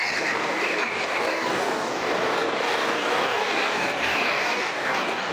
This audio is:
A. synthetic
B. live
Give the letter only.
A